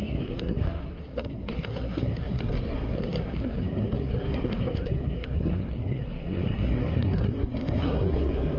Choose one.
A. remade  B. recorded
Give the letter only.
A